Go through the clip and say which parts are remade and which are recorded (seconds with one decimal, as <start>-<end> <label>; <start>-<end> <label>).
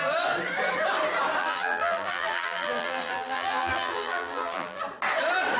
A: 0.0-1.4 recorded; 1.4-4.8 remade; 4.8-5.6 recorded